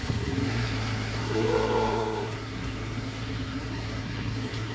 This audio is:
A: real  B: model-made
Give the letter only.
B